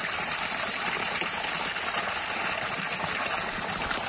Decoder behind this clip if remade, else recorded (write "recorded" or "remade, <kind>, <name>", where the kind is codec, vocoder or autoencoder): recorded